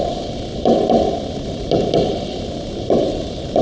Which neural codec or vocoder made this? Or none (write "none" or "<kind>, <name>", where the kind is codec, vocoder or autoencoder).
none